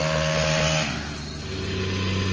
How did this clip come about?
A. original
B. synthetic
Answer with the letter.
A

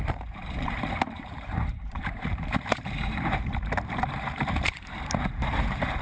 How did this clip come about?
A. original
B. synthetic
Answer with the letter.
B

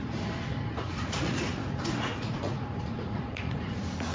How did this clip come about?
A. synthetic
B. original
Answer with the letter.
A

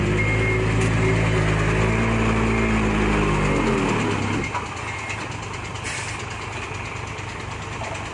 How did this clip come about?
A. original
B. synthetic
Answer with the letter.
A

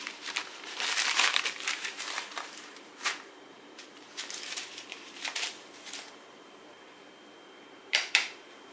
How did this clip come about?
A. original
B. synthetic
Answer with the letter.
B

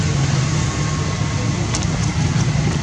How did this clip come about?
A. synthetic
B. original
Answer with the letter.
B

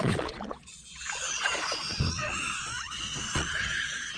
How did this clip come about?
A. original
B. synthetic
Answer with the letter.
B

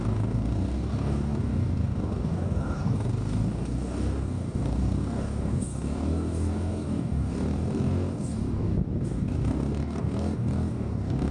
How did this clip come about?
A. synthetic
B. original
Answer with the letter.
A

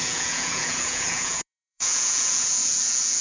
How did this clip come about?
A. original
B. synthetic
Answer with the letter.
B